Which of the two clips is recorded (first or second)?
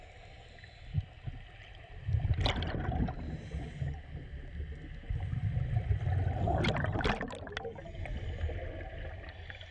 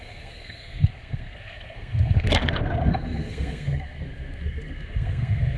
first